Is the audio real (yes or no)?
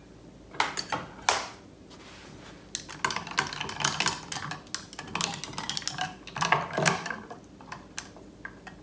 yes